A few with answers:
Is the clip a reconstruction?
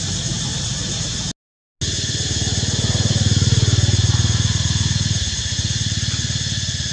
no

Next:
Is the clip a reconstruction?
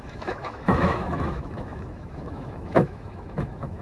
yes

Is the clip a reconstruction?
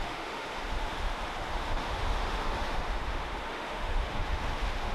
yes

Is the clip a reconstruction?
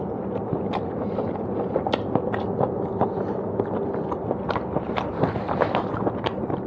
no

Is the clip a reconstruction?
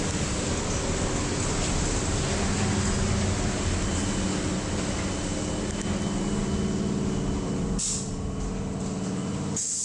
no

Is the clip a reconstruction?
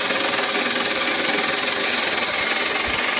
no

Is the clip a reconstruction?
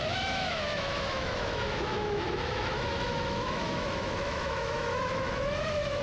yes